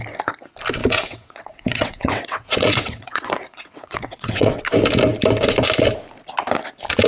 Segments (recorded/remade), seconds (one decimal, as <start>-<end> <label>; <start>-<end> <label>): 0.0-0.8 recorded; 0.8-4.6 remade; 4.6-7.1 recorded